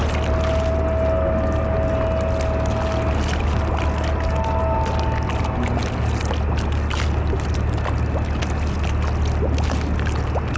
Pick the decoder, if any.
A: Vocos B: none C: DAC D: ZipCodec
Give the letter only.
B